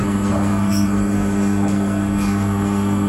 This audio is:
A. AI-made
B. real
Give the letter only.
A